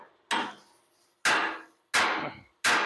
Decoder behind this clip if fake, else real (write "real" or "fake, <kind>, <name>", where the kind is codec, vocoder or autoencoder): real